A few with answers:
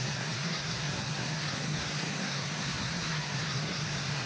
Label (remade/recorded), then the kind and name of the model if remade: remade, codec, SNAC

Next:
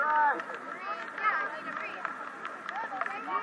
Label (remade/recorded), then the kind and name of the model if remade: recorded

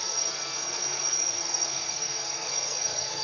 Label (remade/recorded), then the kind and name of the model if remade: remade, codec, SNAC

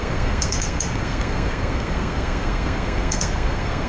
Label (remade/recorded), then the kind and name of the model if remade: remade, codec, SNAC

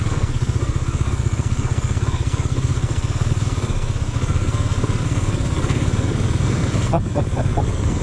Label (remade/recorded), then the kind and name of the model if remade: remade, codec, SNAC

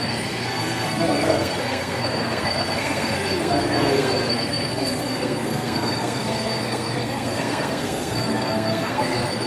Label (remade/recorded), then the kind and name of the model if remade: remade, codec, SNAC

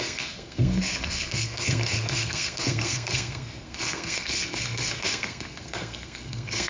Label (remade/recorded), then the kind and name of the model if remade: remade, codec, SNAC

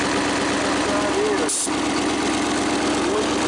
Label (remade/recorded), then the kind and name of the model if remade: recorded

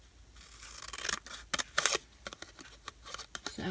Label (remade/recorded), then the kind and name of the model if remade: recorded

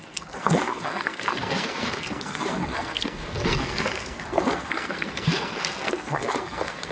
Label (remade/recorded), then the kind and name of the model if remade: remade, codec, SNAC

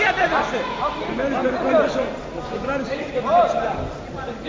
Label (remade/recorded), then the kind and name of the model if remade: recorded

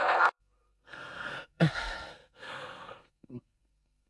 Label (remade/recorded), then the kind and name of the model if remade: remade, codec, SNAC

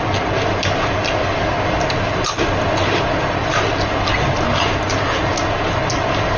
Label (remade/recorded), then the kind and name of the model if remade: recorded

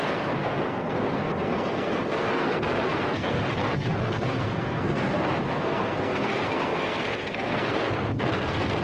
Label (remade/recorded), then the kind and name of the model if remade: remade, codec, SNAC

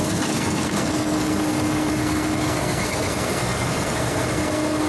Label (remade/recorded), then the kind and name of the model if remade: remade, codec, SNAC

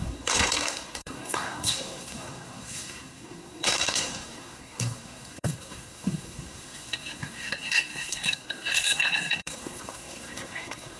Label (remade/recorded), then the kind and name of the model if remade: remade, codec, SNAC